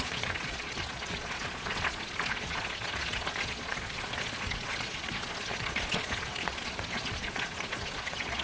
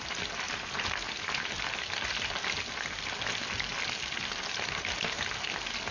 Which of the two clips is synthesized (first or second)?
first